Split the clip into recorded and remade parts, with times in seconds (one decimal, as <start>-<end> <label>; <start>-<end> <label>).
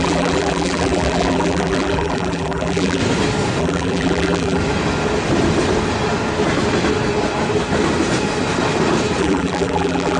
0.0-3.0 remade; 3.0-3.6 recorded; 3.6-4.6 remade; 4.6-9.2 recorded; 9.2-10.2 remade